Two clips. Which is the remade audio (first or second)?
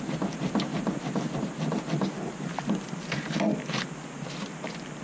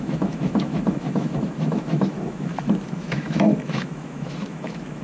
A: second